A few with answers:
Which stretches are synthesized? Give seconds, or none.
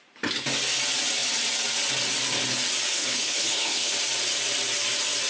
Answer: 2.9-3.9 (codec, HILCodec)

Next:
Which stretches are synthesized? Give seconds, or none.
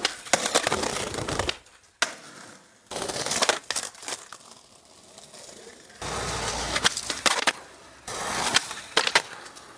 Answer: none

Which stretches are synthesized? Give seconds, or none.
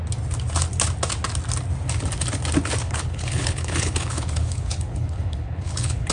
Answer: 2.8-6.1 (codec, HILCodec)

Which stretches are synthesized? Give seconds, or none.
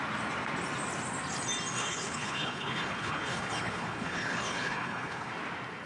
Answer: 1.8-5.3 (codec, HILCodec)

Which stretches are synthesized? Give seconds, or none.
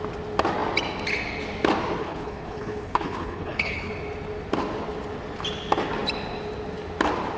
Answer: 2.0-3.9 (codec, HILCodec)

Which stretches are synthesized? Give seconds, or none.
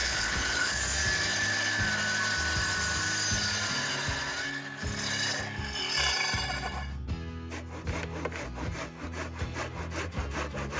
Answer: 0.0-0.8 (codec, HILCodec)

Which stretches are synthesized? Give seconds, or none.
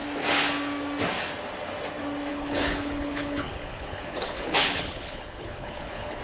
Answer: 2.3-6.2 (codec, HILCodec)